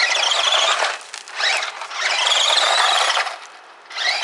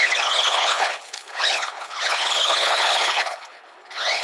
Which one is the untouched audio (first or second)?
first